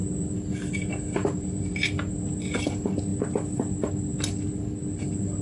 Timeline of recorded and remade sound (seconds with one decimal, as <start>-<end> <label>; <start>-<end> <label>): 0.0-5.4 recorded